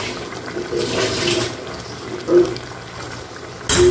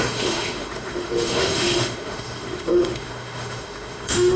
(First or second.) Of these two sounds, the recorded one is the first